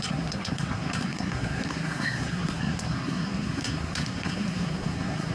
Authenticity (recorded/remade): remade